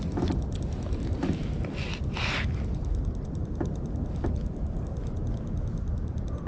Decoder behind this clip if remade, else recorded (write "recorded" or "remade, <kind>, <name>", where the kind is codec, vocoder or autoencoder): recorded